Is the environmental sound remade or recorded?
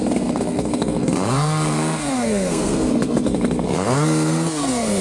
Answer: remade